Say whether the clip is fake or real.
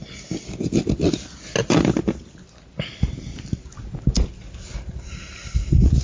real